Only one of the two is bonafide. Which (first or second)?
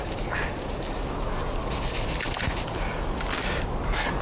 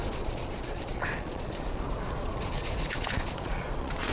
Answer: first